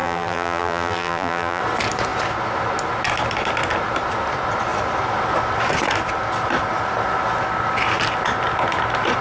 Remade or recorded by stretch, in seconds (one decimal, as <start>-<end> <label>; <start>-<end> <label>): 0.0-1.6 remade; 1.6-9.2 recorded